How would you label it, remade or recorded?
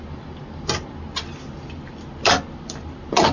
recorded